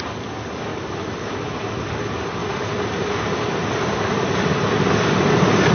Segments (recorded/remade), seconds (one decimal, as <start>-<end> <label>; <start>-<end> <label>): 0.0-0.7 recorded; 0.7-1.9 remade; 1.9-2.4 recorded; 2.4-4.4 remade; 4.4-5.7 recorded